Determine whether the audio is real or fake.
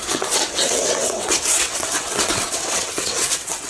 fake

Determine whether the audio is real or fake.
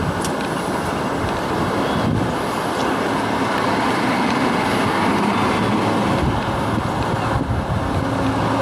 real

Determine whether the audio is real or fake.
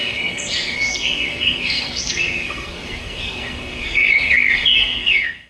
fake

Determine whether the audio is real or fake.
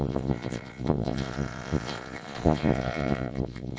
fake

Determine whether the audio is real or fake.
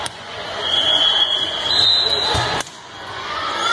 fake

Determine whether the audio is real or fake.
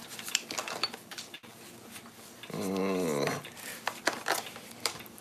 fake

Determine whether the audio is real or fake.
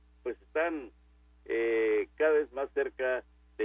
real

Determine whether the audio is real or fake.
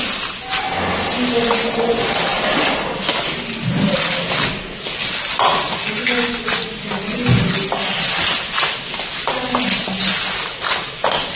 real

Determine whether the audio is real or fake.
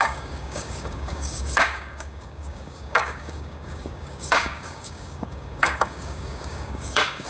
fake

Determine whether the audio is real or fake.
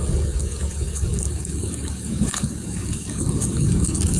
fake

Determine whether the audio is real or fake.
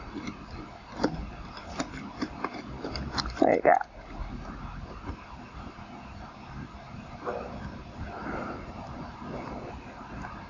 real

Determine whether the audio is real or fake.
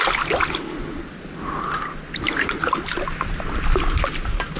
real